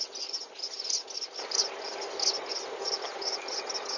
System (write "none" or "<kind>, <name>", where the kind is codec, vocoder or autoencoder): none